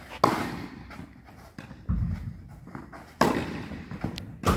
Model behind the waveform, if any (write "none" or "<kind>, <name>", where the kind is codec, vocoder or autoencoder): none